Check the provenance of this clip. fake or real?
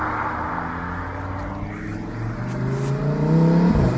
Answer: real